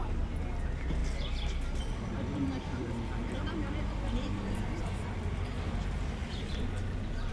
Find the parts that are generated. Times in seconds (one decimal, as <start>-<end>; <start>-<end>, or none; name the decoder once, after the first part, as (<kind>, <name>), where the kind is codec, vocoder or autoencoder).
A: none